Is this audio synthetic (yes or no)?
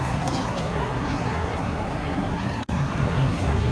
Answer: yes